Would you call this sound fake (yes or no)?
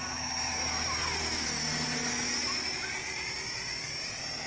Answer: no